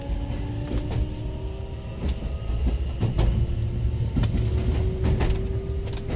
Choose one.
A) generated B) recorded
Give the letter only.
B